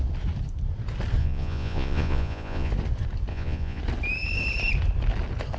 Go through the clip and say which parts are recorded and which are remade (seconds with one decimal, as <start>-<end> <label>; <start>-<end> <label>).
0.0-1.2 recorded; 1.2-2.7 remade; 2.7-3.3 recorded; 3.3-3.8 remade; 3.8-5.6 recorded